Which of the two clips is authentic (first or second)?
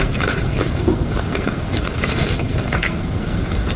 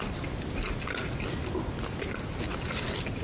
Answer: second